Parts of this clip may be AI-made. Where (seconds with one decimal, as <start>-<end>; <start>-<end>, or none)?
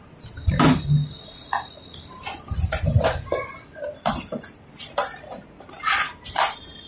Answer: 0.0-1.0; 4.8-6.9